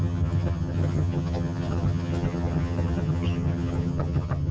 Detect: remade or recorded remade